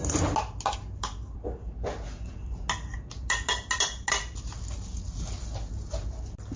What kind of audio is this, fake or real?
real